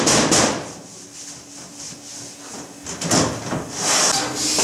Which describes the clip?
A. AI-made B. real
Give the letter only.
B